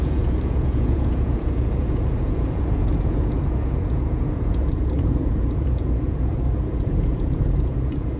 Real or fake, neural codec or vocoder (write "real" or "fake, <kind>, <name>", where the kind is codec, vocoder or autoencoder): fake, vocoder, Vocos